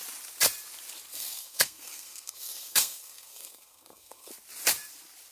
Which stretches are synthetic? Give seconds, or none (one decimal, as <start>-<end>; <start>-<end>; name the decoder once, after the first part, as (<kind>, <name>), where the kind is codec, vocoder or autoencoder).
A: 1.1-4.3 (codec, SNAC)